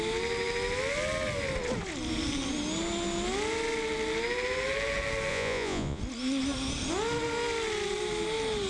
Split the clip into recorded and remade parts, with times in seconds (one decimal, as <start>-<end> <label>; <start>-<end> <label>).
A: 0.0-5.3 recorded; 5.3-6.0 remade; 6.0-8.7 recorded